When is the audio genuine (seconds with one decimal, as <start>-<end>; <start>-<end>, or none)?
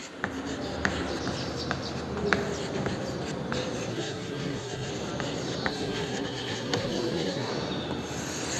0.0-3.9; 4.9-5.7; 7.5-8.6